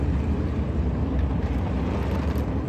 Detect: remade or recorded recorded